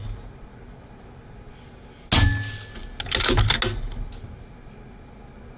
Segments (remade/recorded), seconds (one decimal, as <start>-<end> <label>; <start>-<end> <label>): 0.0-5.6 recorded